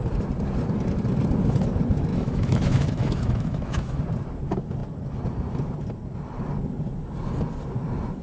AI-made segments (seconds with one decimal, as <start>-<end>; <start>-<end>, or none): 2.1-4.0